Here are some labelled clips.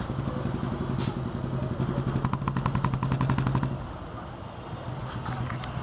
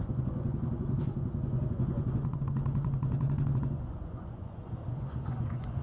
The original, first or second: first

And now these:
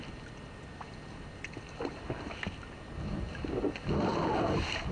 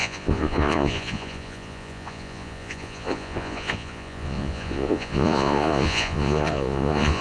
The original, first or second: first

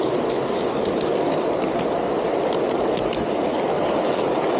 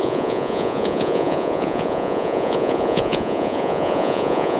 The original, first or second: first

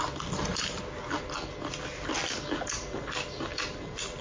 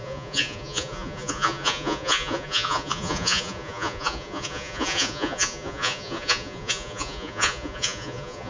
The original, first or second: first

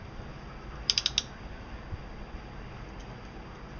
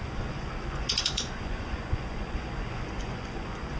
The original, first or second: first